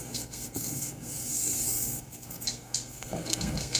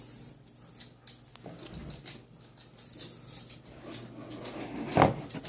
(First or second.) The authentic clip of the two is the second